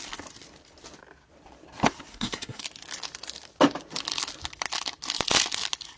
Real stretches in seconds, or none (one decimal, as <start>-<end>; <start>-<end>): 0.0-2.1; 2.6-6.0